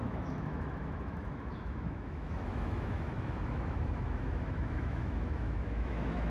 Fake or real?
fake